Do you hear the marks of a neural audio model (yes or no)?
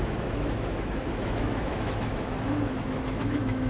yes